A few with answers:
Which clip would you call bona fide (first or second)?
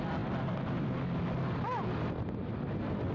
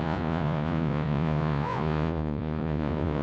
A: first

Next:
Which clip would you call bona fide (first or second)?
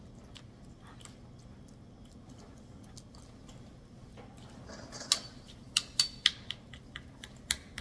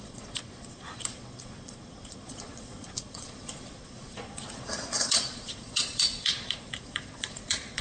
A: first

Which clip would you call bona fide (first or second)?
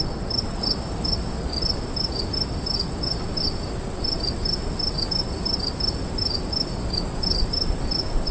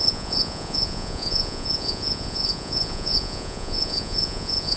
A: first